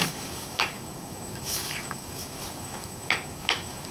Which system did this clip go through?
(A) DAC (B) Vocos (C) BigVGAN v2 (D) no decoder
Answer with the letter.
A